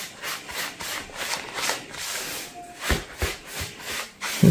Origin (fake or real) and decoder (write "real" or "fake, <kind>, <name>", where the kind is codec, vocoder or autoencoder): real